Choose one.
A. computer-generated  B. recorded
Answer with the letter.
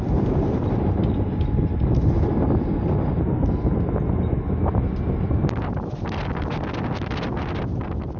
B